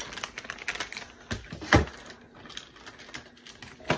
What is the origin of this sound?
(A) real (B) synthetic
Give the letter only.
A